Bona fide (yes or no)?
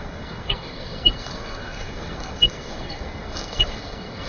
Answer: no